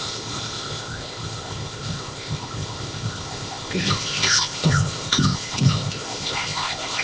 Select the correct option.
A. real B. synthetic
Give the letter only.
B